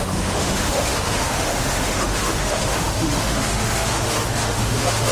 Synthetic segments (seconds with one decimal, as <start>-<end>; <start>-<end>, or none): 0.0-5.1